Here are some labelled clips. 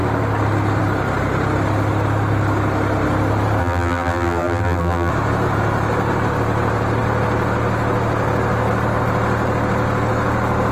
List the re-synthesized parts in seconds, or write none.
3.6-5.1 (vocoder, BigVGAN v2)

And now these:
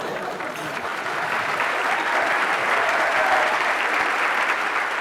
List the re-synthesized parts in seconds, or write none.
2.4-3.9 (vocoder, BigVGAN v2)

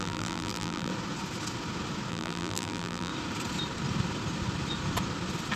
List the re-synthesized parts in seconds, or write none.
0.0-0.9 (vocoder, BigVGAN v2); 2.1-3.1

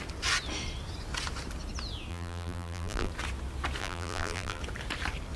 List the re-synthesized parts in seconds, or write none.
2.1-3.1 (vocoder, BigVGAN v2); 3.8-4.6

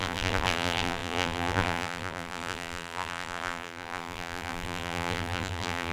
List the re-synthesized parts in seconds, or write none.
0.0-5.9 (vocoder, BigVGAN v2)

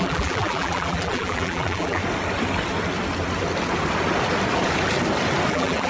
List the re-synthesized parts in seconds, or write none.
0.0-2.0 (vocoder, BigVGAN v2); 5.5-5.9

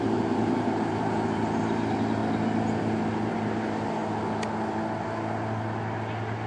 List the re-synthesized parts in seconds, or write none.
0.0-2.2 (vocoder, BigVGAN v2); 3.1-4.0